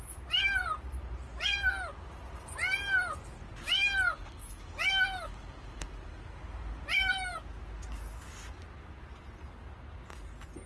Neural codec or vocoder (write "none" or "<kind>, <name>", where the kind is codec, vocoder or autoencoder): none